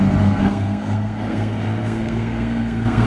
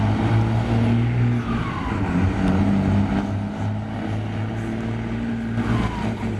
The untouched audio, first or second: second